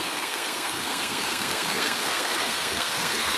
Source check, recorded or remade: remade